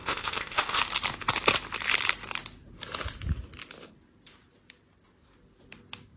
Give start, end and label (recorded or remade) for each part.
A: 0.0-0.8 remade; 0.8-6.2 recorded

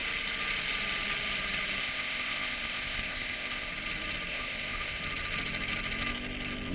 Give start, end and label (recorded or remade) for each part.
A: 0.0-1.8 recorded; 1.8-3.7 remade; 3.7-4.3 recorded; 4.3-5.0 remade; 5.0-6.7 recorded

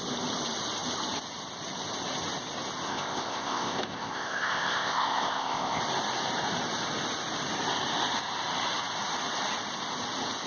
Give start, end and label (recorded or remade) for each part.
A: 0.0-2.9 recorded; 2.9-5.8 remade; 5.8-10.5 recorded

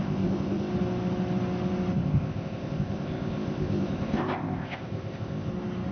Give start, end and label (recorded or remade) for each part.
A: 0.0-0.7 remade; 0.7-2.0 recorded; 2.0-5.5 remade; 5.5-5.9 recorded

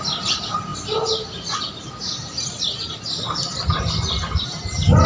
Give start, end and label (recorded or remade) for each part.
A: 0.0-5.1 recorded

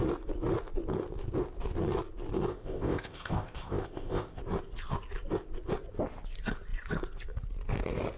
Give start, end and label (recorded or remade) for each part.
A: 0.0-2.5 recorded; 2.5-4.4 remade; 4.4-8.2 recorded

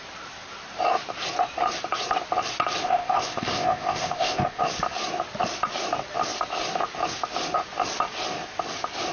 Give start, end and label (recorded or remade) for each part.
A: 0.0-2.8 recorded; 2.8-4.6 remade; 4.6-9.1 recorded